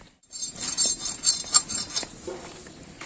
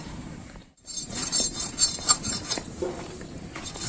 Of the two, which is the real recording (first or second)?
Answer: first